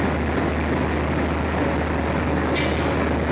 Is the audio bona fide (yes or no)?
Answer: yes